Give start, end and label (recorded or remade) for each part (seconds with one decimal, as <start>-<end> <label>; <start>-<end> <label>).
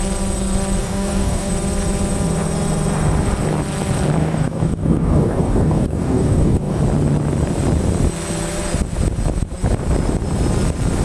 0.0-0.8 recorded; 0.8-1.5 remade; 1.5-4.2 recorded; 4.2-6.8 remade; 6.8-11.0 recorded